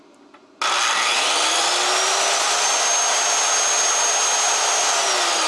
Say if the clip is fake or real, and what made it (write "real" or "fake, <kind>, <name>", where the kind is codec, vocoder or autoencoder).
real